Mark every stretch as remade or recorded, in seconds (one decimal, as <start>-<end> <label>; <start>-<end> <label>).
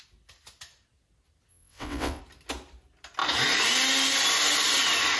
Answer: 0.0-1.5 recorded; 1.5-2.2 remade; 2.2-5.2 recorded